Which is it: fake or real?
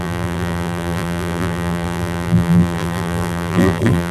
fake